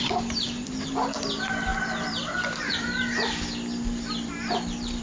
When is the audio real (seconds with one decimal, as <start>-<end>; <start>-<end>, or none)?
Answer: none